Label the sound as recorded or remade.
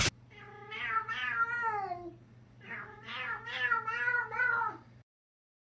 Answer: recorded